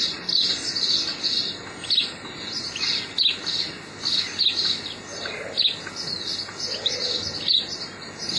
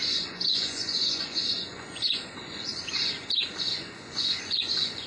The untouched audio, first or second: first